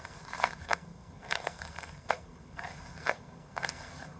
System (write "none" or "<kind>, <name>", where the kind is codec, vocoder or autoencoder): codec, SNAC